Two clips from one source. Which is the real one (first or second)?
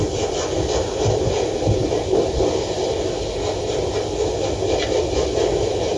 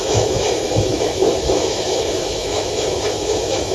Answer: first